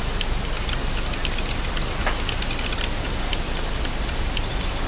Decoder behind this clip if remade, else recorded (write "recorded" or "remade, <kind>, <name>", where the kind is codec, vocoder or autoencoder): recorded